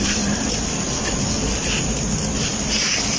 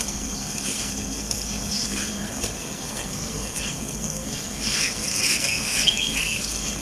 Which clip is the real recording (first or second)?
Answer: first